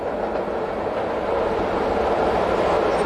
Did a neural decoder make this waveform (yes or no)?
no